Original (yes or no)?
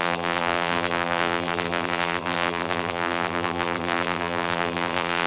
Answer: no